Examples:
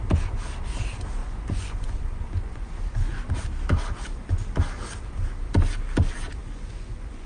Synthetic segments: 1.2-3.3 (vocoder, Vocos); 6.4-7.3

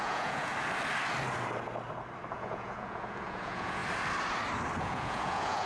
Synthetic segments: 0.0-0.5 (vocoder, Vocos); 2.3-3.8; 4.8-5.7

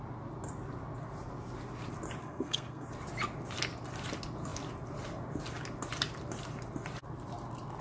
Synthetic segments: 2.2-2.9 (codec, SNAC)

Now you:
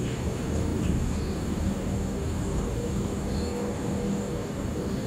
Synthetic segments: 0.0-5.1 (codec, DAC)

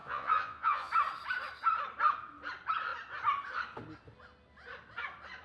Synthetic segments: 0.0-0.9 (vocoder, Vocos)

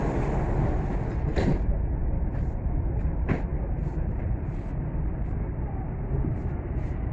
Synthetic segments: 1.3-3.5 (vocoder, BigVGAN v2); 4.2-7.1

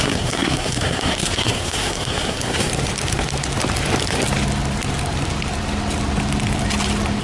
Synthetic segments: 0.0-2.7 (codec, SNAC)

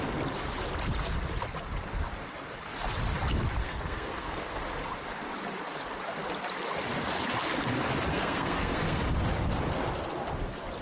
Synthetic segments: 3.6-4.6 (codec, SNAC); 8.1-9.0